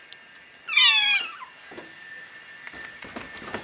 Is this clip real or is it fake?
real